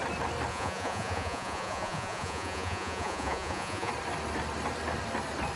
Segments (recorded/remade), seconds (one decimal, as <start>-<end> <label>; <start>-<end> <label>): 0.0-0.5 recorded; 0.5-3.9 remade; 3.9-5.6 recorded